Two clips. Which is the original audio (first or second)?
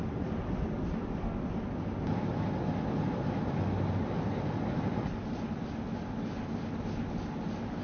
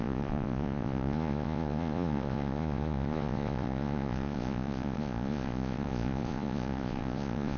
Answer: first